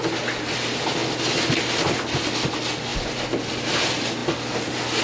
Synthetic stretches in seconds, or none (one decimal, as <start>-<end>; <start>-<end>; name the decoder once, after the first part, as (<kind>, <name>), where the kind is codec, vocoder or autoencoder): none